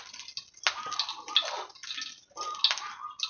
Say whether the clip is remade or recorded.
recorded